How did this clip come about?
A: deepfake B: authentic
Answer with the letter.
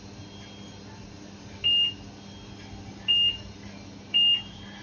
B